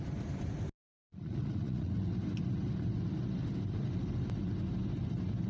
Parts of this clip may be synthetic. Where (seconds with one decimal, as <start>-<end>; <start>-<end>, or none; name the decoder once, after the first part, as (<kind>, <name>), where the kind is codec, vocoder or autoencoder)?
1.0-1.9 (vocoder, Vocos)